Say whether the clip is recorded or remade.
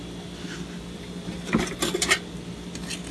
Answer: recorded